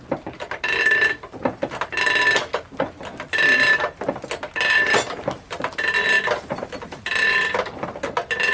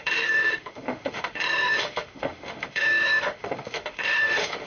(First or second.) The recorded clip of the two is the first